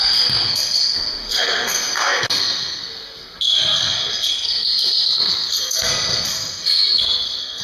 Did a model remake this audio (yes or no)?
yes